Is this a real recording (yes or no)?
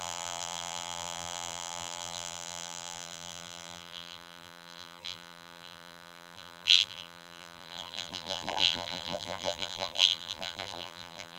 no